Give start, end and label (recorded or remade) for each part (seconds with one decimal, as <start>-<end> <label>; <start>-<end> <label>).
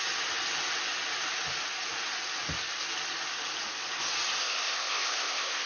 0.0-4.4 recorded; 4.4-5.7 remade